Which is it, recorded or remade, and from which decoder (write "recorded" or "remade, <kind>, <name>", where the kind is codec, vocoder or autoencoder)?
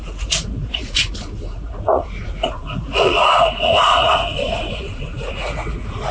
remade, vocoder, Vocos